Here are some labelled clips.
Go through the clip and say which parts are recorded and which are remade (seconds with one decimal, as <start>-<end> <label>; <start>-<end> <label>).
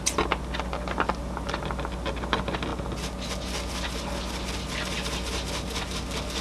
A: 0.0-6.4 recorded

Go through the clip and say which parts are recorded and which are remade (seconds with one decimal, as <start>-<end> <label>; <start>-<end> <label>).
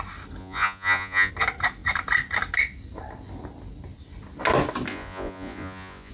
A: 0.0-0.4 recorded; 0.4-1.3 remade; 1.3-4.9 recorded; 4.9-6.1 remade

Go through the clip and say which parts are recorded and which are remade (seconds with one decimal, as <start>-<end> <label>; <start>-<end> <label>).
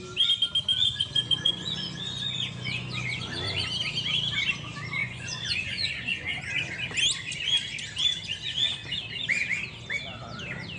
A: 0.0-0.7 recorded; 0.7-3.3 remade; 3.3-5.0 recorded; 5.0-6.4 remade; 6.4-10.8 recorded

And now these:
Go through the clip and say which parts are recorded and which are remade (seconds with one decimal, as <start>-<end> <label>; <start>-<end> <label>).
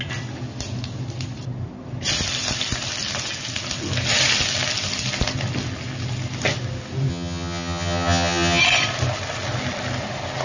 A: 0.0-7.1 recorded; 7.1-8.6 remade; 8.6-10.4 recorded